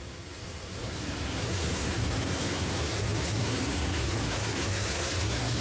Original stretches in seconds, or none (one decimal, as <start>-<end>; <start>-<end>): none